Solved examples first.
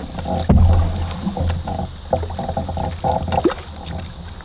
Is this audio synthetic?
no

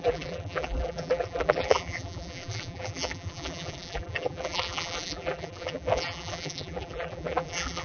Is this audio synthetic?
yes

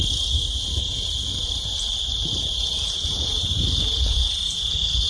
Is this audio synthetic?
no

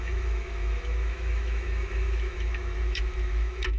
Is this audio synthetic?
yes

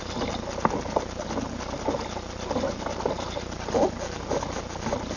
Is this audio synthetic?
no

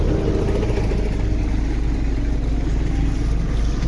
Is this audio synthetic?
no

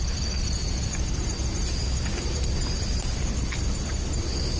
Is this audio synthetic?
no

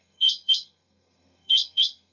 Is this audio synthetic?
yes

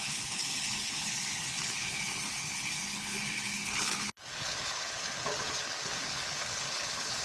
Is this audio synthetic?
yes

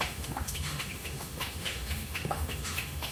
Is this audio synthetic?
yes